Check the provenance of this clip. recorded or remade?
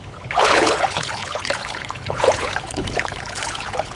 remade